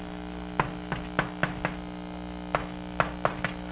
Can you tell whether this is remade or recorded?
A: recorded